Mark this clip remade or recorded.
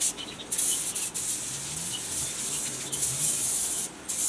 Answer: recorded